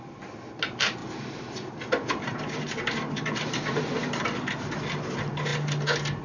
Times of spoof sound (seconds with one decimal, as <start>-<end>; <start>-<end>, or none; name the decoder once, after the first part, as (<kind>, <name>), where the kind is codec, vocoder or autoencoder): none